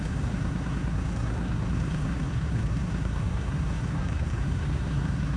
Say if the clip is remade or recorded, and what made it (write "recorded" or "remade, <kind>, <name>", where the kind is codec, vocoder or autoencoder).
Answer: remade, codec, SNAC